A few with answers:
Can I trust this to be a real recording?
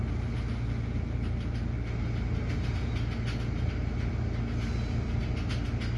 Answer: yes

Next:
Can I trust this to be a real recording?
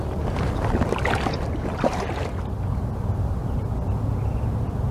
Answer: yes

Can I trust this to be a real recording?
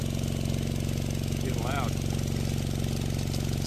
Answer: yes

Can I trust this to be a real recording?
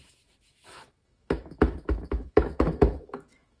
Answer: no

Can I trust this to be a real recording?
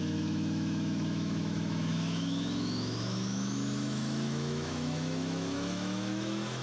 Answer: no